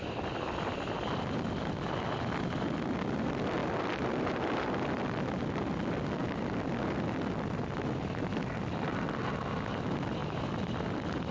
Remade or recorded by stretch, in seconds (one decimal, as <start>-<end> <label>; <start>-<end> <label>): 0.0-3.6 recorded; 3.6-5.0 remade; 5.0-10.2 recorded; 10.2-11.3 remade